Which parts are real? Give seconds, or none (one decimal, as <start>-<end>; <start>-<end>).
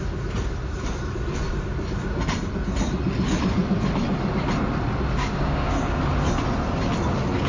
0.0-5.2; 6.0-7.5